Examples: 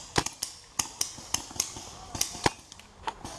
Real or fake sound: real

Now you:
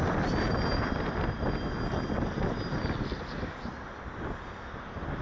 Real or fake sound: real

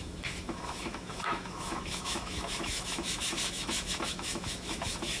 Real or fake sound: fake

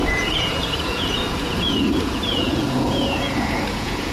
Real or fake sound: fake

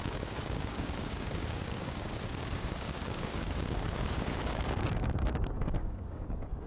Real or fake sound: fake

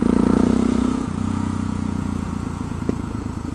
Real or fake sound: fake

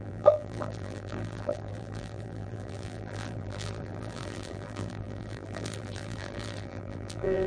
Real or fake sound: fake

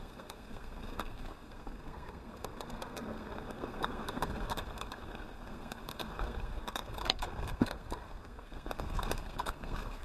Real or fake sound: fake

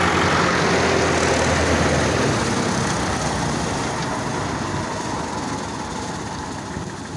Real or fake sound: real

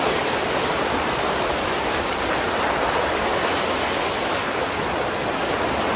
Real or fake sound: real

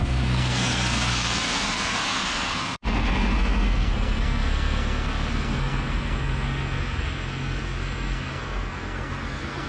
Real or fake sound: fake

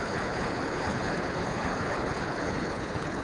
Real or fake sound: fake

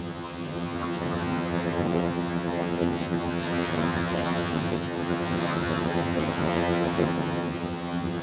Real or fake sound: fake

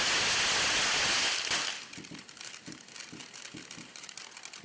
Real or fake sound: real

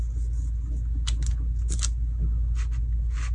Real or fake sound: real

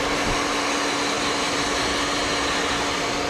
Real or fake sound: real